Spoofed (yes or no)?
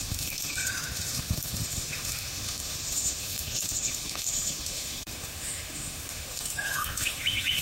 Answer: yes